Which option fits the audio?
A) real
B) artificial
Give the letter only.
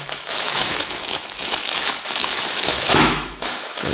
B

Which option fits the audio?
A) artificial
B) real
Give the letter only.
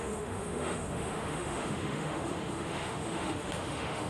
A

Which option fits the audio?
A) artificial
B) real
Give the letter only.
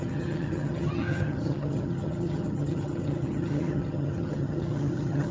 A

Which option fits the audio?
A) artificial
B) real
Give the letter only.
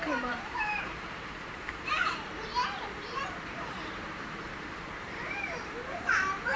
A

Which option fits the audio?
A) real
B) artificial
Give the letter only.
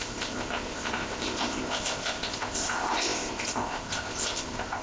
B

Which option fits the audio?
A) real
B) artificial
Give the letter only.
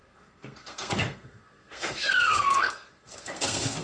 B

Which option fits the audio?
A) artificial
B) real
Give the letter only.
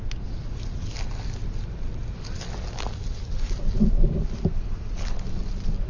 B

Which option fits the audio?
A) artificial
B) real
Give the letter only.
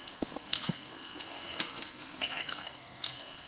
A